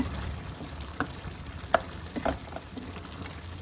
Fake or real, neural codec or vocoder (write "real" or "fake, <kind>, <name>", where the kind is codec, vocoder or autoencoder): real